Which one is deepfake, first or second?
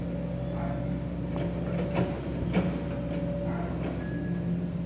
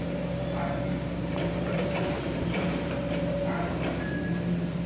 second